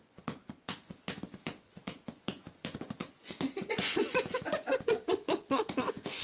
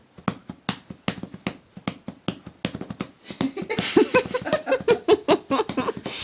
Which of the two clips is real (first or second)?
second